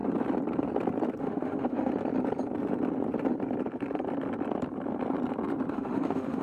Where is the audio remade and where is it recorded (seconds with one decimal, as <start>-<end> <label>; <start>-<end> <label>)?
0.0-1.2 recorded; 1.2-1.9 remade; 1.9-5.7 recorded; 5.7-6.4 remade